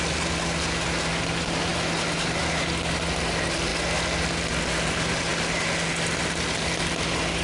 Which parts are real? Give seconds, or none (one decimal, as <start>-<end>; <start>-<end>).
0.0-7.4